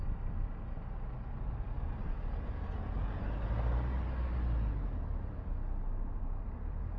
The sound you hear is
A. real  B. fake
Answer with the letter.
A